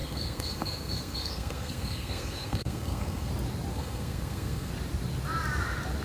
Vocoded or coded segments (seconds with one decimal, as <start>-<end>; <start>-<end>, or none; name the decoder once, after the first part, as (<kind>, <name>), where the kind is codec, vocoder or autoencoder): 0.0-3.3 (codec, SNAC); 3.7-4.7